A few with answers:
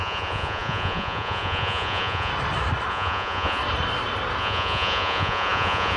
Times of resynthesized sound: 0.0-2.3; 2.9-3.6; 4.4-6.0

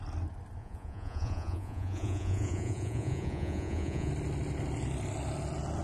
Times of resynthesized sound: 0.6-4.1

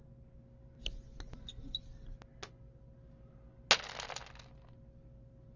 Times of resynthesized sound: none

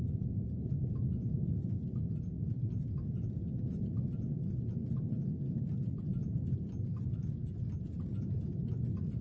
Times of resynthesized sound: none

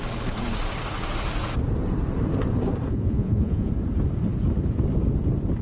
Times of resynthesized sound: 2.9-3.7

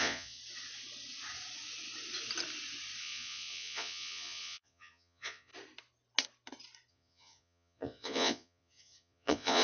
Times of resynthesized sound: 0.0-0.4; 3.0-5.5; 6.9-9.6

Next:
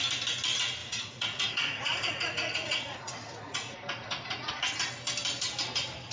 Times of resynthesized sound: 0.8-4.5

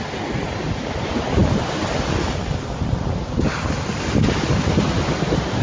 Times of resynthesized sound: none